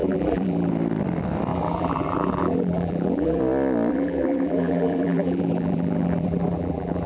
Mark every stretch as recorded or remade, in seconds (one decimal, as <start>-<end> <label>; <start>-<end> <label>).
0.0-0.7 remade; 0.7-1.5 recorded; 1.5-3.4 remade; 3.4-3.9 recorded; 3.9-7.1 remade